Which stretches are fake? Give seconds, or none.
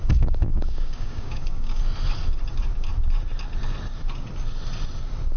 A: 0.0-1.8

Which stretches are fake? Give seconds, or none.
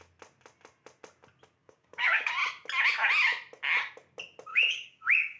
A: 1.6-2.3; 4.5-5.4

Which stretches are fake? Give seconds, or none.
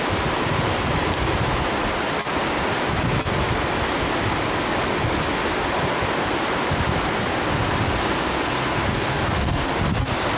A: 8.9-9.8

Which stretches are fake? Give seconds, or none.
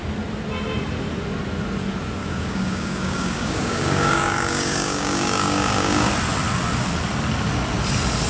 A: 2.2-6.1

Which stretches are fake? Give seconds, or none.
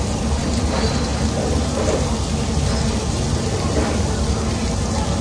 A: none